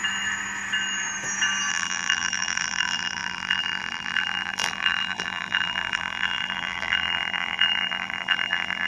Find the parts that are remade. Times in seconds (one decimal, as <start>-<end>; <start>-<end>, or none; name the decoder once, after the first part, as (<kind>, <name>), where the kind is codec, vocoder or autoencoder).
1.7-8.9 (vocoder, BigVGAN v2)